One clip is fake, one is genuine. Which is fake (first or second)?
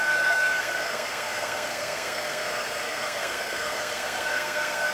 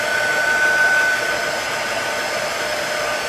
first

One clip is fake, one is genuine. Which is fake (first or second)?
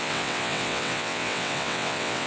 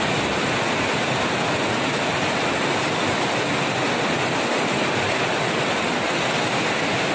first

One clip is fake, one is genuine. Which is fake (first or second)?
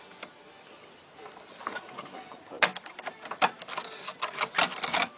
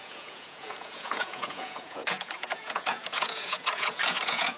second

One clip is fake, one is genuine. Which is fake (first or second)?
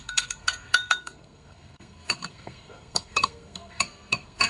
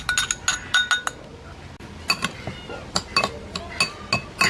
first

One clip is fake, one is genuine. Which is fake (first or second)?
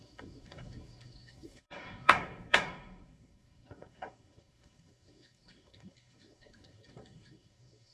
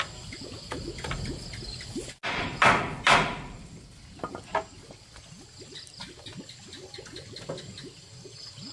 first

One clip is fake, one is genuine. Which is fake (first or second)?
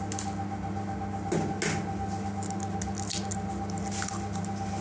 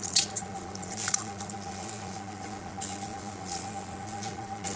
second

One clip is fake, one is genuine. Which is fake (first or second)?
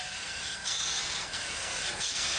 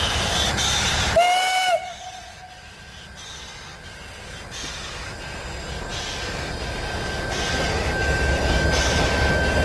first